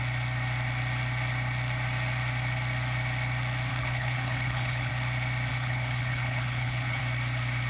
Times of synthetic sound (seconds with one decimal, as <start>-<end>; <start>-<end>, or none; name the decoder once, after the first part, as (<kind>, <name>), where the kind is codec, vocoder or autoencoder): 3.7-4.9 (codec, HILCodec); 5.5-7.0